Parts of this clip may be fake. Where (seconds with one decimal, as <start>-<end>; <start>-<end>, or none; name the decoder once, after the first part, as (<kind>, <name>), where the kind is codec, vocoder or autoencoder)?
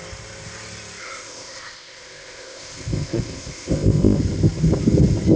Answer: 1.0-4.2 (codec, ZipCodec)